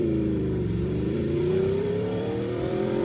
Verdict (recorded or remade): remade